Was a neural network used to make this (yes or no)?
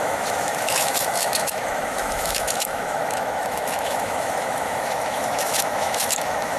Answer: yes